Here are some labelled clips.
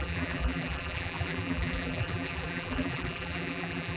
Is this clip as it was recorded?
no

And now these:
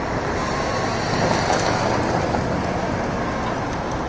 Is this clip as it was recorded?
yes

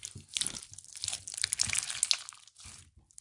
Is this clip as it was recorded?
yes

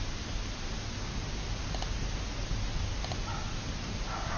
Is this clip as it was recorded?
yes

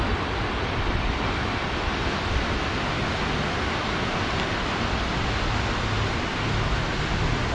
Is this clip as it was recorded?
yes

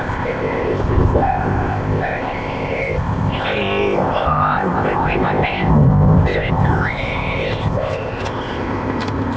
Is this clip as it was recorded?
no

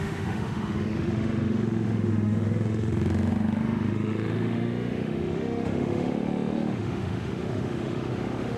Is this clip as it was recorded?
no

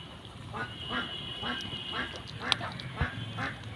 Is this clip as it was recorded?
yes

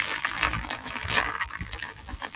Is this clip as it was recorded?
no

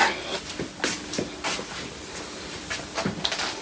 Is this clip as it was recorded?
yes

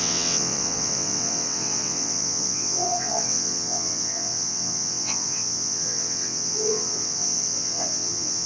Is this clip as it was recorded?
no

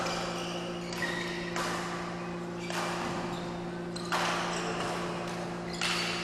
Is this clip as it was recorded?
yes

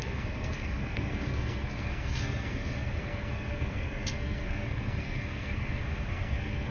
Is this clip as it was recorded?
no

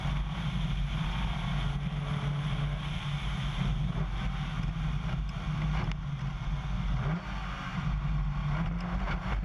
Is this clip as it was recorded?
yes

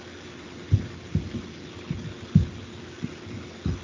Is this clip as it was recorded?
yes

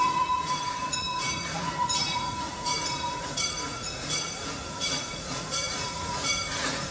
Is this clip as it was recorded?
no